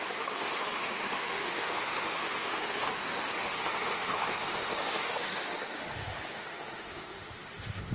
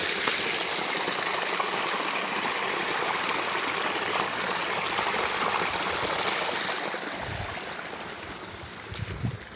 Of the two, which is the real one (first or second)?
second